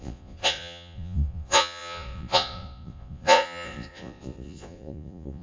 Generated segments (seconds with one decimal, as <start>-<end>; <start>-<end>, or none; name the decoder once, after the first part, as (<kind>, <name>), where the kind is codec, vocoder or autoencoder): 0.0-5.4 (vocoder, Vocos)